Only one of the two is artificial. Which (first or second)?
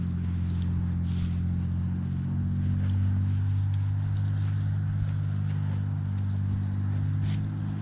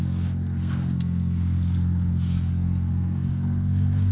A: second